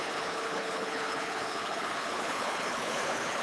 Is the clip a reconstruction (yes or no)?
yes